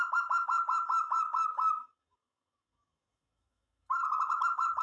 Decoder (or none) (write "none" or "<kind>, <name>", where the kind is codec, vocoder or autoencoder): autoencoder, DAC-VAE